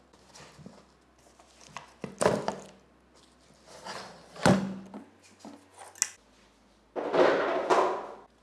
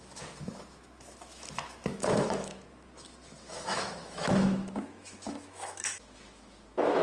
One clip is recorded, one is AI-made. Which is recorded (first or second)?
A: first